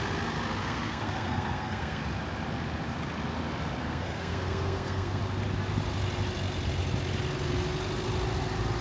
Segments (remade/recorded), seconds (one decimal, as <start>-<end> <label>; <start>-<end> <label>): 0.0-0.6 recorded; 0.6-2.0 remade; 2.0-3.8 recorded; 3.8-5.2 remade; 5.2-8.8 recorded